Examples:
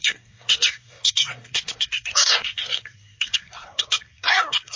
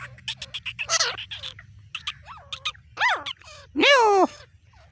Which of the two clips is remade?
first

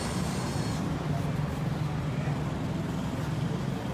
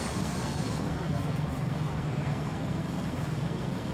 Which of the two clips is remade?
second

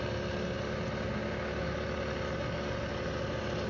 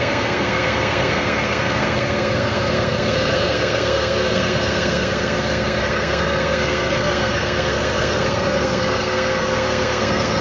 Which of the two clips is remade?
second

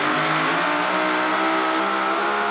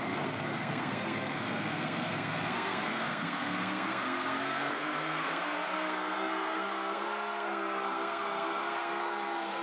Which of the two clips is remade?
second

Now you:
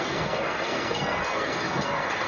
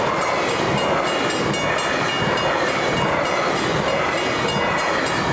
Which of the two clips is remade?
first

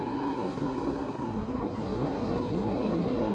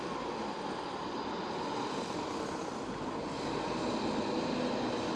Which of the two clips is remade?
first